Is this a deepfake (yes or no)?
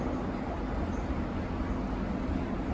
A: no